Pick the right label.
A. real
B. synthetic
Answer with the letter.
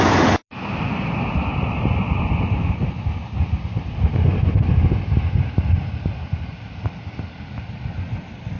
A